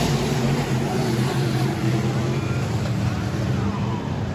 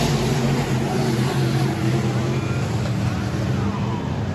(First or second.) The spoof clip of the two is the first